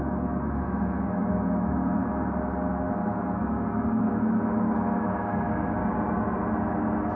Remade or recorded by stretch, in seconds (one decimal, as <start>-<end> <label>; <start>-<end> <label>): 0.0-2.0 remade; 2.0-4.0 recorded; 4.0-5.8 remade; 5.8-7.2 recorded